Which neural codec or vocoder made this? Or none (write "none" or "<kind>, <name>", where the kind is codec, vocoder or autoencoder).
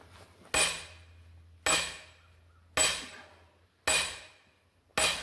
none